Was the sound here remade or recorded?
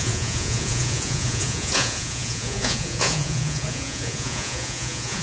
remade